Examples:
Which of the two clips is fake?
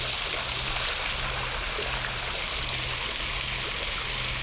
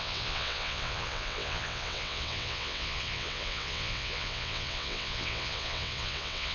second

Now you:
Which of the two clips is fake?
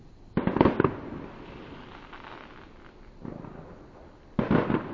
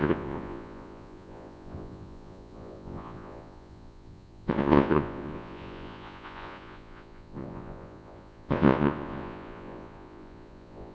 second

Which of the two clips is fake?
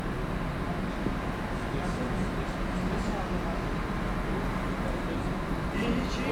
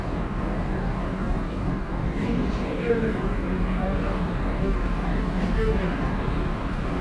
second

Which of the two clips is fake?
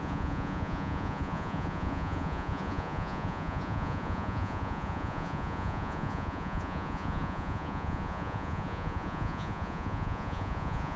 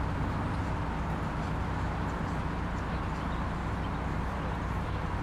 first